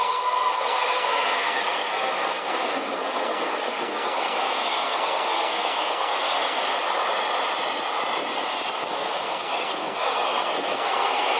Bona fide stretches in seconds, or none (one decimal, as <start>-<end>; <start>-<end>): 6.6-8.9